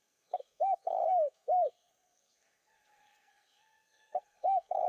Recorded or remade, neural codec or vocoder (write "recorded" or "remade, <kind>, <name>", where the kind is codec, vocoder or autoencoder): remade, codec, SNAC